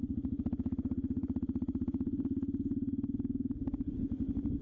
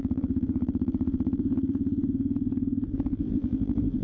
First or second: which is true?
first